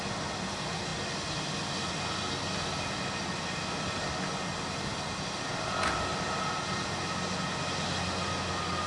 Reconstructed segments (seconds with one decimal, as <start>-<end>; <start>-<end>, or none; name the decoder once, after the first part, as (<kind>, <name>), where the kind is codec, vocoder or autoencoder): none